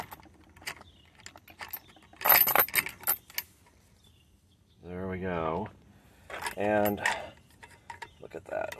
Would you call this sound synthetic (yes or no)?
no